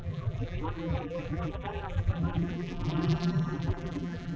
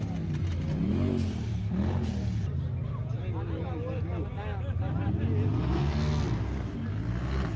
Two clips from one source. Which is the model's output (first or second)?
first